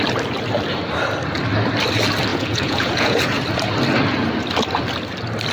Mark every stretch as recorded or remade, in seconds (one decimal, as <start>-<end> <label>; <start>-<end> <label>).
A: 0.0-2.3 recorded; 2.3-3.4 remade; 3.4-5.5 recorded